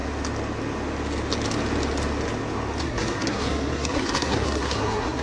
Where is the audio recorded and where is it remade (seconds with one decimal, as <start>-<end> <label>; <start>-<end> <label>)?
0.0-2.8 recorded; 2.8-5.2 remade